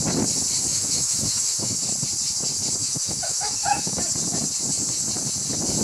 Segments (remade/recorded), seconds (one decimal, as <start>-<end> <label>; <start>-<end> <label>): 0.0-0.7 recorded; 0.7-1.8 remade; 1.8-2.8 recorded; 2.8-4.0 remade; 4.0-5.8 recorded